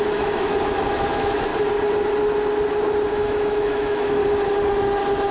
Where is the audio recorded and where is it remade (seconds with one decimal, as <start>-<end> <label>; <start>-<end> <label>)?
0.0-0.5 remade; 0.5-1.1 recorded; 1.1-1.5 remade; 1.5-3.1 recorded; 3.1-4.2 remade; 4.2-5.3 recorded